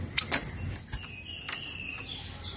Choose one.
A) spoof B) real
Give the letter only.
B